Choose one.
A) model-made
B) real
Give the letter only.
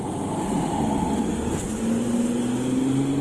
B